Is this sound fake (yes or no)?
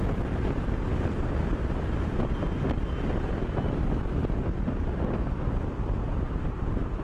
no